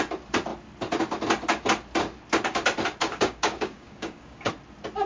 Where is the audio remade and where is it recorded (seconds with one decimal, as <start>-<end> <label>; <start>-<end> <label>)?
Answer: 0.0-3.0 recorded; 3.0-4.5 remade; 4.5-5.1 recorded

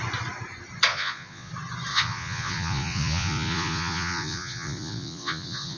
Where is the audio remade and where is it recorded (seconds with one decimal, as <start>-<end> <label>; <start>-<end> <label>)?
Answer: 0.0-0.9 recorded; 0.9-1.5 remade; 1.5-1.9 recorded; 1.9-5.8 remade

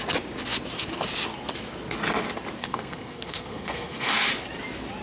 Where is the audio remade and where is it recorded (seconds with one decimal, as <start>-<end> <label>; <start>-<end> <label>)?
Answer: 0.0-2.6 recorded; 2.6-4.1 remade; 4.1-5.0 recorded